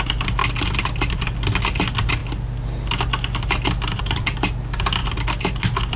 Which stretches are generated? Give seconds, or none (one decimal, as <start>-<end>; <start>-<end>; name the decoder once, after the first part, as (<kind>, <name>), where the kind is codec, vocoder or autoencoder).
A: none